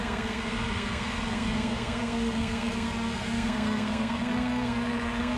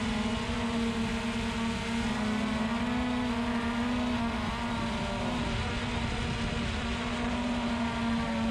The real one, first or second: second